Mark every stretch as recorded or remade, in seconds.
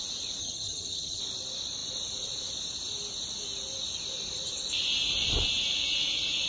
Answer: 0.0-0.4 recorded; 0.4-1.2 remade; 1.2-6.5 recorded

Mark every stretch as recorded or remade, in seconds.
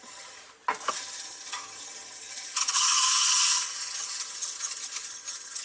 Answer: 0.0-0.4 remade; 0.4-0.9 recorded; 0.9-5.6 remade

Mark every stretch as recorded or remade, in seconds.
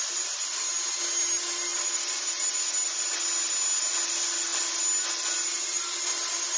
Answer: 0.0-6.6 recorded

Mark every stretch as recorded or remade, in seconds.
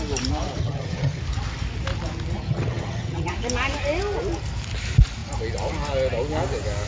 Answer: 0.0-0.6 recorded; 0.6-1.2 remade; 1.2-2.4 recorded; 2.4-3.3 remade; 3.3-6.9 recorded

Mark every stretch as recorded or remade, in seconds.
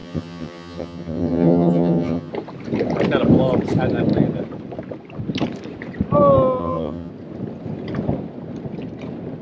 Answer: 0.0-2.3 remade; 2.3-6.6 recorded; 6.6-7.1 remade; 7.1-9.4 recorded